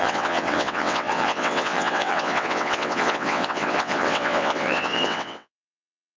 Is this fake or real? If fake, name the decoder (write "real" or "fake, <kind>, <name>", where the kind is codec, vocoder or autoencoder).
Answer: fake, vocoder, WaveNeXt